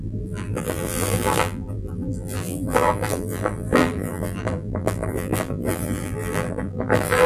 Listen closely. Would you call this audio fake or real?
fake